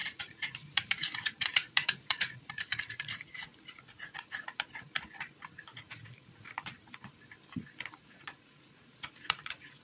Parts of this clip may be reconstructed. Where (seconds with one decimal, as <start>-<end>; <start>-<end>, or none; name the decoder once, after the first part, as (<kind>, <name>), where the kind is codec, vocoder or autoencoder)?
0.0-4.8 (vocoder, Vocos); 5.7-6.5; 8.0-9.8